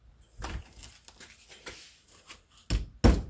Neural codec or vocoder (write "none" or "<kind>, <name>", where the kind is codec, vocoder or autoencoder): none